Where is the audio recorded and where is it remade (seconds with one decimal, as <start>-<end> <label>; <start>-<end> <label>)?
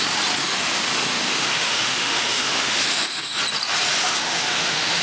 0.0-0.4 recorded; 0.4-3.4 remade; 3.4-4.0 recorded; 4.0-5.0 remade